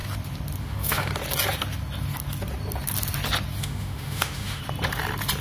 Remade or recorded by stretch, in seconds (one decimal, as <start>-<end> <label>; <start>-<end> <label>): 0.0-0.6 recorded; 0.6-1.1 remade; 1.1-3.6 recorded; 3.6-4.6 remade; 4.6-5.4 recorded